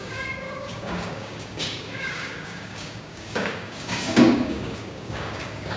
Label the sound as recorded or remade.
remade